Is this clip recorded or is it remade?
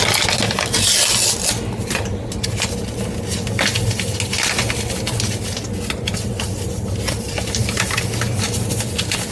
recorded